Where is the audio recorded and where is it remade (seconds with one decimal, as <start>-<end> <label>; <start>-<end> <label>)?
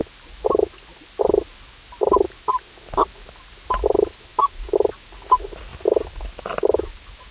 0.0-7.3 recorded